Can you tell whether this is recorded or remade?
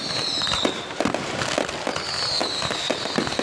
recorded